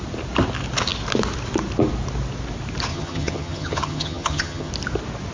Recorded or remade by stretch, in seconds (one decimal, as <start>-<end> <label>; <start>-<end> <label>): 0.0-2.9 recorded; 2.9-4.7 remade; 4.7-5.3 recorded